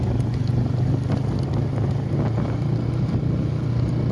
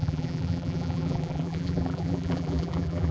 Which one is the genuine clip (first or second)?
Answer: first